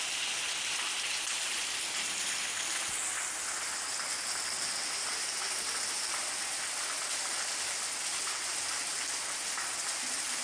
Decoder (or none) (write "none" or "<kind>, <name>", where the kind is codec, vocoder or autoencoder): none